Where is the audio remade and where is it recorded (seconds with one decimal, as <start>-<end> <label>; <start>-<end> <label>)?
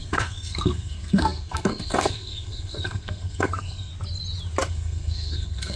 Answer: 0.0-3.9 remade; 3.9-4.7 recorded; 4.7-5.8 remade